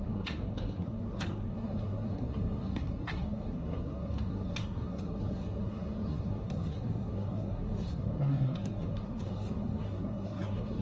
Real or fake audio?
fake